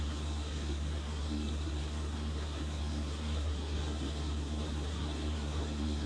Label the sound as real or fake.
fake